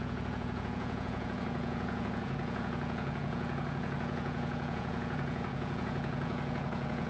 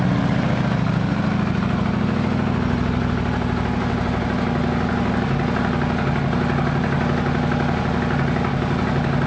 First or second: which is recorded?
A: second